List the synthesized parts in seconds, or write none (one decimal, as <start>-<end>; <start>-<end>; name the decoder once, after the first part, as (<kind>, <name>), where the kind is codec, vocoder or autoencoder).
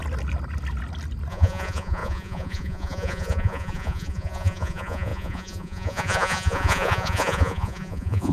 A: 1.3-8.3 (vocoder, Vocos)